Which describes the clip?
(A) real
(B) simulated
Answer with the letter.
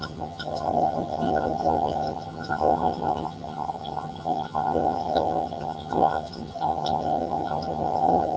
B